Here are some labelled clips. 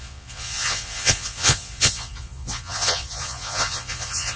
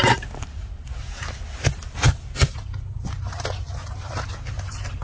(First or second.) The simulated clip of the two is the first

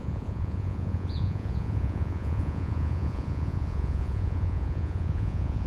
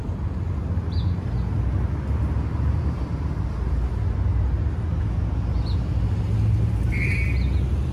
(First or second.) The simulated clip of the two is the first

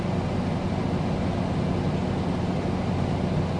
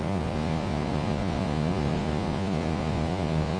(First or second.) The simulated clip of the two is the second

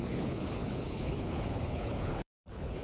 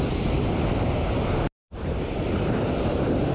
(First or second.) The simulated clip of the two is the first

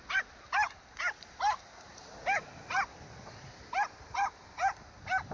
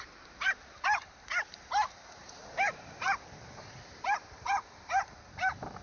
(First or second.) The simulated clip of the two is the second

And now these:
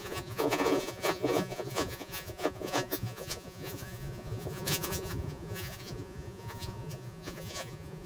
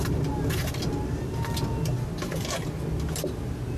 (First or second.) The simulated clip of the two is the first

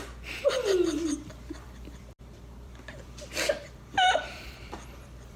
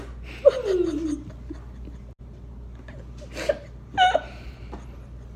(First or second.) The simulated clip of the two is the first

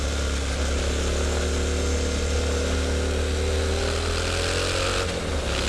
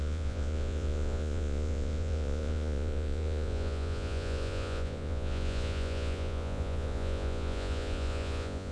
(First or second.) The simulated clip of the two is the second